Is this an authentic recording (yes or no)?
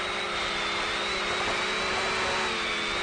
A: no